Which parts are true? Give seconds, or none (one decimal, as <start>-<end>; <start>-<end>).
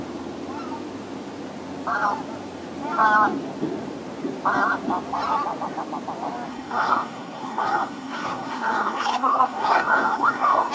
0.0-6.5